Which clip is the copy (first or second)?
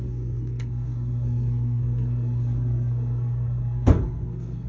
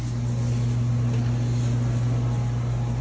first